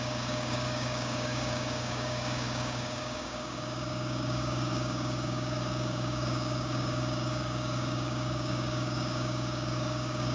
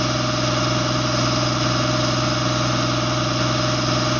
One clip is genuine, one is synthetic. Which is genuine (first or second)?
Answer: second